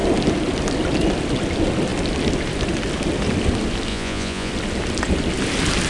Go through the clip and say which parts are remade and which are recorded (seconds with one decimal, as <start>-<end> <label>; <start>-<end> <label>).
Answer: 0.0-3.9 recorded; 3.9-4.5 remade; 4.5-5.9 recorded